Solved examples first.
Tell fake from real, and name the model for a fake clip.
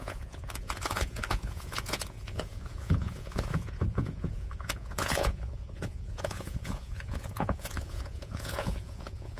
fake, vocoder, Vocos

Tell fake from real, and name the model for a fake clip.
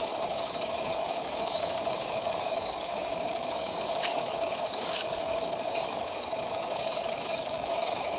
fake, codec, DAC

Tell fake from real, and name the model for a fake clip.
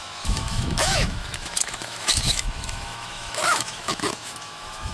fake, autoencoder, DAC-VAE